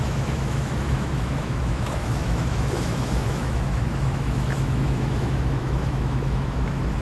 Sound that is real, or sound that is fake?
fake